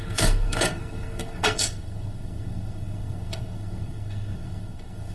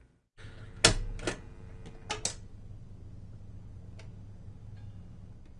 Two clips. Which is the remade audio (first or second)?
first